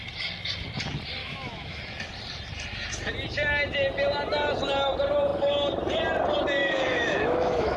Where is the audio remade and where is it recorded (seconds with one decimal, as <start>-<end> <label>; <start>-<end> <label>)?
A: 0.0-1.2 recorded; 1.2-1.8 remade; 1.8-6.6 recorded; 6.6-7.8 remade